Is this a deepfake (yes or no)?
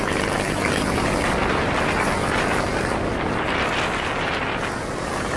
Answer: no